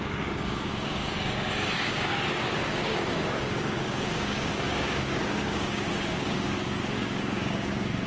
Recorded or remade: remade